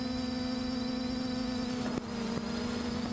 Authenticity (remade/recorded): recorded